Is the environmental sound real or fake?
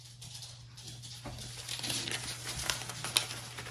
real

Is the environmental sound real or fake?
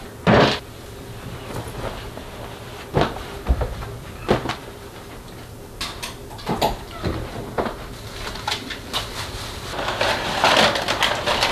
real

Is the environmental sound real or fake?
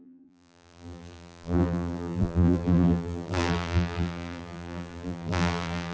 fake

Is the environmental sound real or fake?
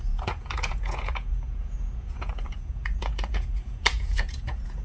fake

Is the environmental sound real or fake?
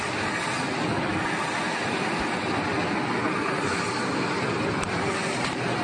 real